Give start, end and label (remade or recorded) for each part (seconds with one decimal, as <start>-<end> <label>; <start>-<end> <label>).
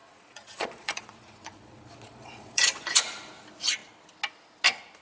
0.0-3.0 remade; 3.0-5.0 recorded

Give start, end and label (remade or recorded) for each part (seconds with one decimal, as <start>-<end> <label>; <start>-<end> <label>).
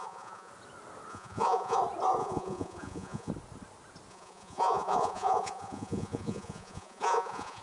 0.0-0.5 remade; 0.5-1.1 recorded; 1.1-1.8 remade; 1.8-2.2 recorded; 2.2-3.3 remade; 3.3-4.1 recorded; 4.1-7.6 remade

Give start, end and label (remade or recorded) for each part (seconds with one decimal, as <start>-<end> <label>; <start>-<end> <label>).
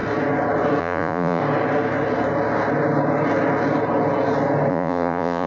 0.0-0.8 recorded; 0.8-1.4 remade; 1.4-4.7 recorded; 4.7-5.5 remade